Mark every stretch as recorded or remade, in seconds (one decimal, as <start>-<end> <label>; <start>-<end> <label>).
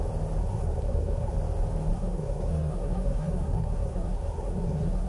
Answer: 0.0-0.4 recorded; 0.4-1.3 remade; 1.3-1.9 recorded; 1.9-5.1 remade